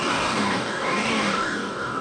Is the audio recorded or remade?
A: remade